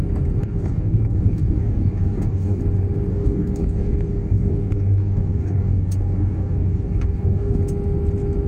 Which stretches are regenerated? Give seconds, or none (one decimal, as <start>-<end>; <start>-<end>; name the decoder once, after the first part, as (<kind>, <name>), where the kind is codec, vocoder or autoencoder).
0.4-2.6 (codec, DAC); 3.1-7.6